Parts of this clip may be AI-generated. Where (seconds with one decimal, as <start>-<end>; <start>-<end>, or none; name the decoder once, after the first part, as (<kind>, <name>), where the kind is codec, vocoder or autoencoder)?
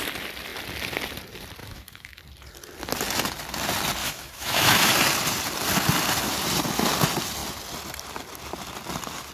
1.6-2.2 (autoencoder, DAC-VAE); 4.0-4.9